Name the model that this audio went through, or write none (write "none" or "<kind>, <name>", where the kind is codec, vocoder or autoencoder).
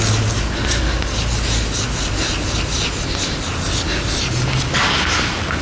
none